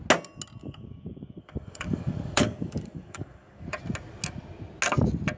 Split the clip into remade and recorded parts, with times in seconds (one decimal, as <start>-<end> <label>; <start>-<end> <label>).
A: 0.0-0.6 recorded; 0.6-3.8 remade; 3.8-5.4 recorded